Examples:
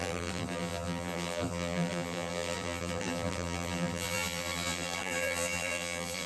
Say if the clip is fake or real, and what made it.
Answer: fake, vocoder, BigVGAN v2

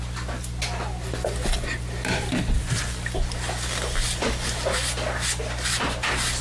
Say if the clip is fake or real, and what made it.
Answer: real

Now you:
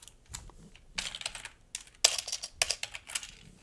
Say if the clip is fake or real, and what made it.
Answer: real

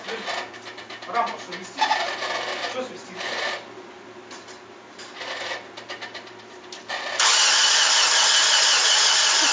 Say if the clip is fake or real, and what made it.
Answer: real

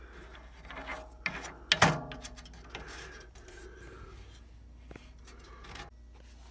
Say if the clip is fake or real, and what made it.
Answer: real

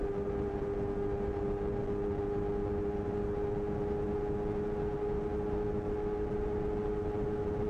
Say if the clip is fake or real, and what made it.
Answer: real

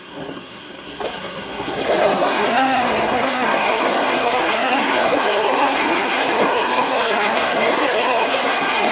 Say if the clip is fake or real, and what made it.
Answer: fake, codec, SNAC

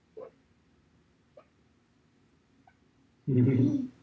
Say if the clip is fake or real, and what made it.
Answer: real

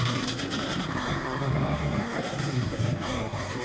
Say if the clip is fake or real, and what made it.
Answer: fake, codec, SNAC